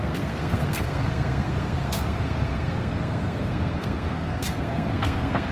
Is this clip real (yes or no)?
no